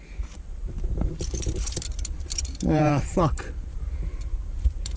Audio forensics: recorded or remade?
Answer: remade